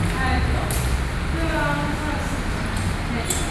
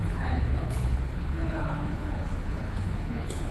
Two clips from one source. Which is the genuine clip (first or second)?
first